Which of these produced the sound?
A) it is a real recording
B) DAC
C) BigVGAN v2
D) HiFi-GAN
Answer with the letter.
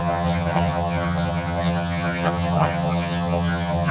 D